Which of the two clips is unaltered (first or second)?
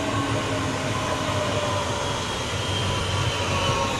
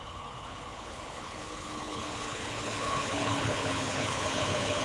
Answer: first